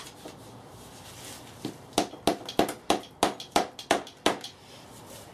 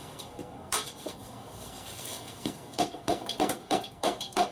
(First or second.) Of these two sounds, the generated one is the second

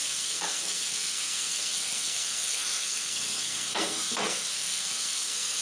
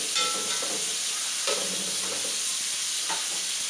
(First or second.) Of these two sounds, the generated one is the first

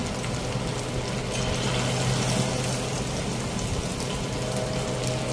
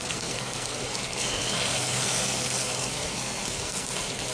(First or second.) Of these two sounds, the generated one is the second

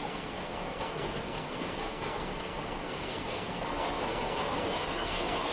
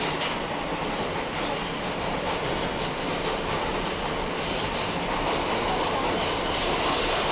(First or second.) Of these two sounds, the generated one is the first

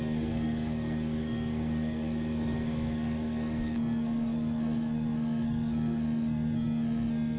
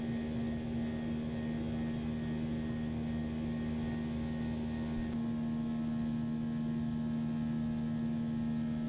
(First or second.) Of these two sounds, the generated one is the first